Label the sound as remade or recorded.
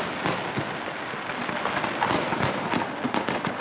recorded